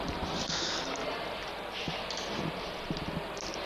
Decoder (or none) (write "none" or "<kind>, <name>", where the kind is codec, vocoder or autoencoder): none